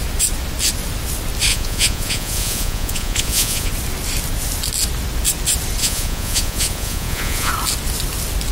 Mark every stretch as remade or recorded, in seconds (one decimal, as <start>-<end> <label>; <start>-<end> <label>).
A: 0.0-1.5 recorded; 1.5-3.7 remade; 3.7-5.8 recorded; 5.8-7.5 remade; 7.5-8.5 recorded